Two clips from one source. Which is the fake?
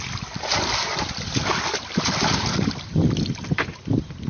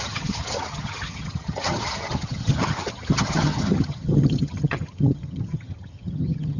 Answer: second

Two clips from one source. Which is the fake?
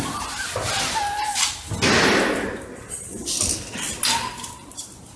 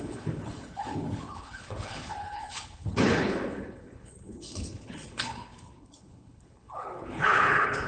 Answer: second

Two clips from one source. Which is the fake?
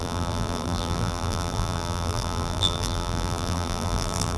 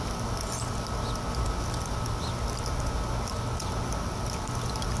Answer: first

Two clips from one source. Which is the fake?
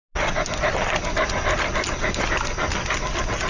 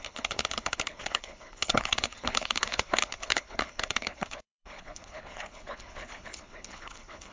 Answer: second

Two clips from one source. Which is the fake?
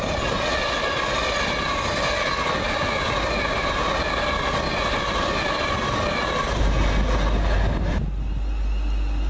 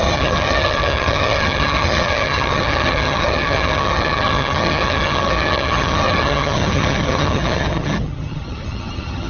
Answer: second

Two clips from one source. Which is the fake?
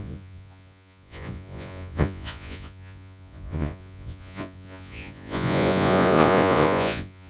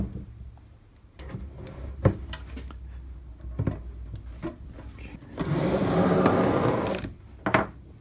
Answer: first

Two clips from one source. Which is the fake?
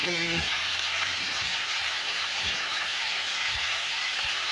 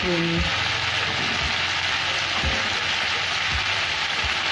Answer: first